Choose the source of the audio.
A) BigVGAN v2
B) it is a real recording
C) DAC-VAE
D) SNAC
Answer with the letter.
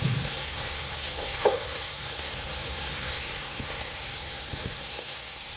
D